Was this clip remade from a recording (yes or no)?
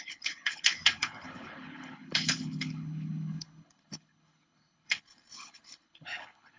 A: yes